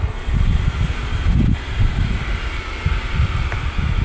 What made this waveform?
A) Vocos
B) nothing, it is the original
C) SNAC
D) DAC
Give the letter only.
B